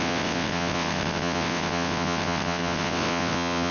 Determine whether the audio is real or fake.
fake